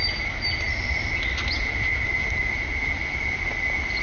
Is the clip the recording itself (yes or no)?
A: yes